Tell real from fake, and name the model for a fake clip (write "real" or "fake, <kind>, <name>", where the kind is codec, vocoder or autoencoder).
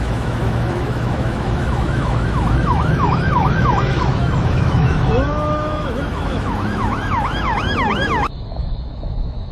fake, autoencoder, DAC-VAE